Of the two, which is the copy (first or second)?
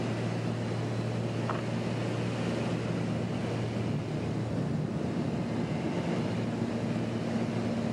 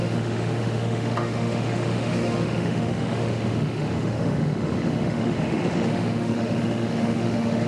second